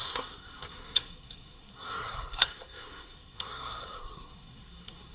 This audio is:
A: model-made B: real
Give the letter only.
A